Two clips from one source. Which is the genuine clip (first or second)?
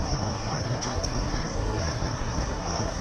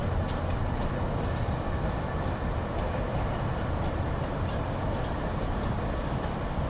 second